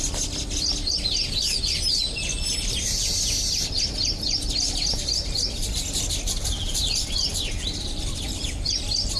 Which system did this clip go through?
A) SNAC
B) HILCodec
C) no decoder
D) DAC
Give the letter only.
C